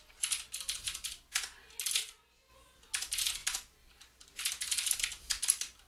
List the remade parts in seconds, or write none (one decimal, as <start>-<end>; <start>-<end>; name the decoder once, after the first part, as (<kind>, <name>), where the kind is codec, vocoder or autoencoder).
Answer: none